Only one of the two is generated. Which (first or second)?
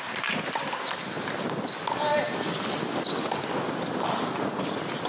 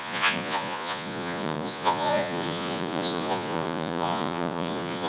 second